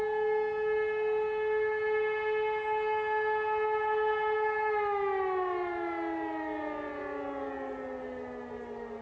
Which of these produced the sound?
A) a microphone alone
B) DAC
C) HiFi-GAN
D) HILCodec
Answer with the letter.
A